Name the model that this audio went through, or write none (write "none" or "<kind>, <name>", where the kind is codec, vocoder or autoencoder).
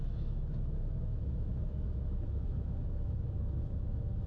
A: autoencoder, DAC-VAE